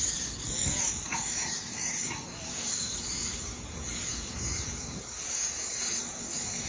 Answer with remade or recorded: remade